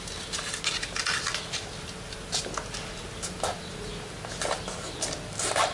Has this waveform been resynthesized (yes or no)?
no